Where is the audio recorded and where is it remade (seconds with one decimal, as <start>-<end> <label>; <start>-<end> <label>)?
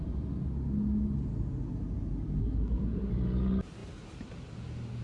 0.0-2.4 recorded; 2.4-3.1 remade; 3.1-5.0 recorded